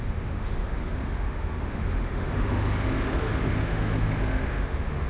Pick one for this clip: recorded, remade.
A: remade